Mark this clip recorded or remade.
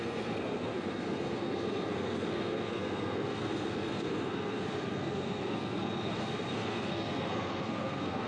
remade